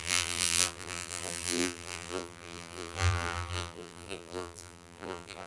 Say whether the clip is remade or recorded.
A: remade